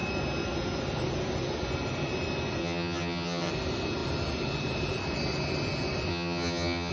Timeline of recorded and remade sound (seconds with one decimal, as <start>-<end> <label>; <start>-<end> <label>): 0.0-2.6 recorded; 2.6-3.5 remade; 3.5-6.1 recorded; 6.1-6.9 remade